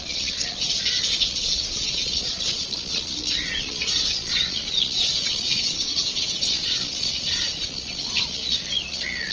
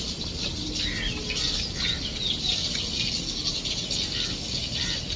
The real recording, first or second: second